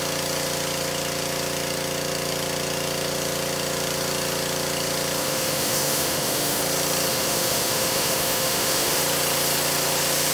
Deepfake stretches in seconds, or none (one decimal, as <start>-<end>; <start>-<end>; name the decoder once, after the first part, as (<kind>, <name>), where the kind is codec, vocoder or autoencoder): 5.2-6.6 (autoencoder, DAC-VAE); 7.1-9.0